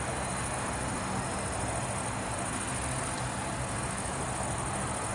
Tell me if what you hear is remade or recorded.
recorded